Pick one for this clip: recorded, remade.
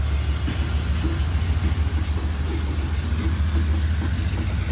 recorded